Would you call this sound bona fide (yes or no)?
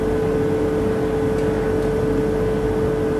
yes